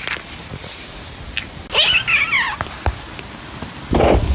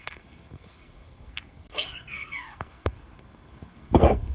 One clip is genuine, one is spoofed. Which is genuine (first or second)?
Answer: first